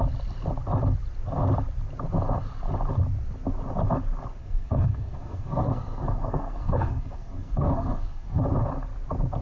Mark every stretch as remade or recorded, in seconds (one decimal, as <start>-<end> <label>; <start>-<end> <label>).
0.0-4.4 recorded; 4.4-8.4 remade; 8.4-9.4 recorded